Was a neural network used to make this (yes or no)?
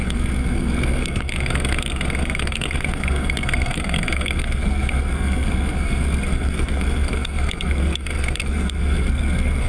yes